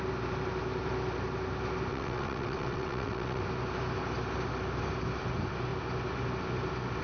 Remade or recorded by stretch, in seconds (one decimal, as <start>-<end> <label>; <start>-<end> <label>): 0.0-1.9 recorded; 1.9-3.4 remade; 3.4-7.0 recorded